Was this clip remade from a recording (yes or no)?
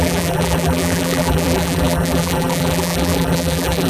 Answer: yes